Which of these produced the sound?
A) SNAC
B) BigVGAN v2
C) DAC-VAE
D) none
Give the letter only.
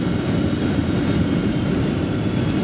B